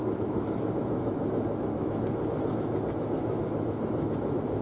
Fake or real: fake